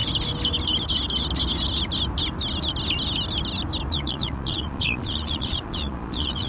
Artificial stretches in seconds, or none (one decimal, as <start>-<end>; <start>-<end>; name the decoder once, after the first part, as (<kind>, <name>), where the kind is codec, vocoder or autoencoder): 3.9-6.5 (vocoder, Vocos)